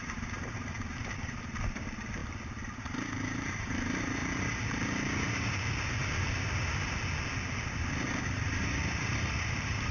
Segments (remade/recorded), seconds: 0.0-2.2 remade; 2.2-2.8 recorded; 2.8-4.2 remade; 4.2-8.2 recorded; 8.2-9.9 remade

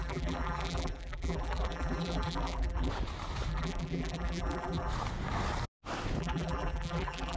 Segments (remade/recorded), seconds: 0.0-2.9 remade; 2.9-3.5 recorded; 3.5-4.9 remade; 4.9-6.2 recorded; 6.2-7.4 remade